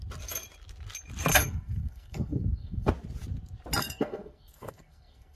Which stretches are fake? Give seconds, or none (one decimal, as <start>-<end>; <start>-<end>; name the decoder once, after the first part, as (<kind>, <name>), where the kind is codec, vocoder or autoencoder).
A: 1.3-2.9 (codec, SNAC); 3.8-5.4